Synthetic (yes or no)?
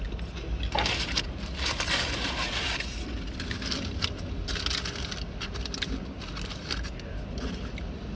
no